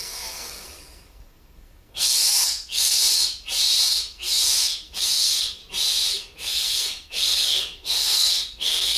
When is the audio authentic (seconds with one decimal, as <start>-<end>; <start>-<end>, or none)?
3.0-3.9; 5.6-6.1